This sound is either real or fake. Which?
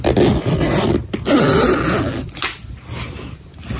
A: real